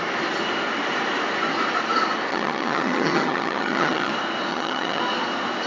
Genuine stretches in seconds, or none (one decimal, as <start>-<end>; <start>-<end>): 0.0-2.3; 4.1-4.5; 5.0-5.7